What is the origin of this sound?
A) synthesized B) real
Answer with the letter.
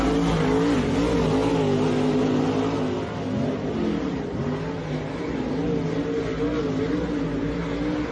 B